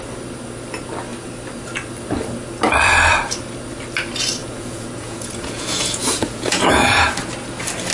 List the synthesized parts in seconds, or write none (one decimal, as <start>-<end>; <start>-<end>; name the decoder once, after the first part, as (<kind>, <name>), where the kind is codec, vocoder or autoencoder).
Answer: 4.4-7.1 (vocoder, Vocos)